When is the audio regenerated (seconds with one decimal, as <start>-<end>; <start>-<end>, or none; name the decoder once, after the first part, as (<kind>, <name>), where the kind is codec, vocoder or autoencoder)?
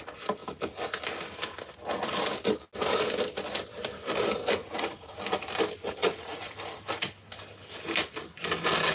4.6-5.2 (vocoder, Vocos); 6.0-6.6